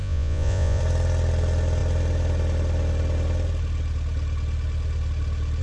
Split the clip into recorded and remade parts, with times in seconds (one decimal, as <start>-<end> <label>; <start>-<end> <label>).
0.0-0.8 remade; 0.8-5.6 recorded

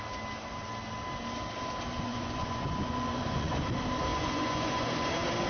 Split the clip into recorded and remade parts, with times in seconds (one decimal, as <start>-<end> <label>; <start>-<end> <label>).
0.0-2.1 recorded; 2.1-3.6 remade; 3.6-4.1 recorded; 4.1-5.1 remade; 5.1-5.5 recorded

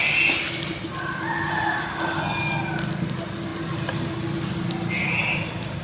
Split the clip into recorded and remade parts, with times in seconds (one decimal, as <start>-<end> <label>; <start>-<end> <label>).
0.0-5.8 recorded

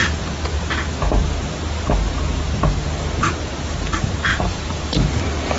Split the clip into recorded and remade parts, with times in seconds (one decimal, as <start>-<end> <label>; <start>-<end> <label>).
0.0-4.3 recorded; 4.3-5.1 remade; 5.1-5.6 recorded

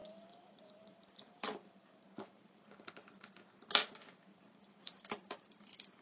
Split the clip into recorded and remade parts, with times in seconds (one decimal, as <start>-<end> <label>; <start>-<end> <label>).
0.0-2.7 remade; 2.7-4.3 recorded; 4.3-6.0 remade